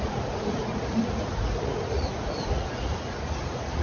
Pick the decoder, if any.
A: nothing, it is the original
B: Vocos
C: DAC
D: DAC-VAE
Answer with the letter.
B